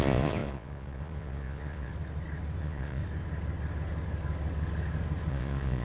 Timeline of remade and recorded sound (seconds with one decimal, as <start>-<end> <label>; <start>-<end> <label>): 0.0-1.9 remade; 1.9-2.6 recorded; 2.6-3.0 remade; 3.0-5.3 recorded; 5.3-5.8 remade